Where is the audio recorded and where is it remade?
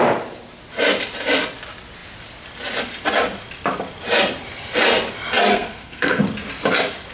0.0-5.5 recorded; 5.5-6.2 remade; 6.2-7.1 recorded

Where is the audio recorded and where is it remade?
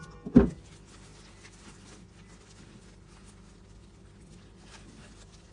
0.0-5.5 recorded